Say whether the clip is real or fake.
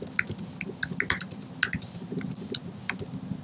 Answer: real